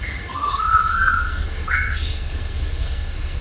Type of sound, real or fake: fake